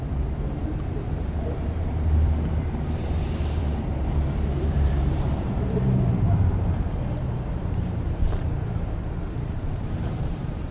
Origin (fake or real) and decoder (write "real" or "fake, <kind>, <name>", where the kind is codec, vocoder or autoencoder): fake, vocoder, BigVGAN v2